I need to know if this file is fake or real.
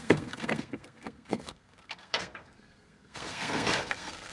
fake